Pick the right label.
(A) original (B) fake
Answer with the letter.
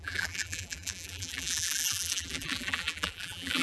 B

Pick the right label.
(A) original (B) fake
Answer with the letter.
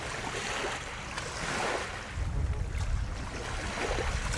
A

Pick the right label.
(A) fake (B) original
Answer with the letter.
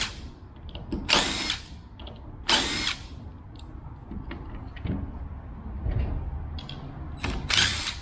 B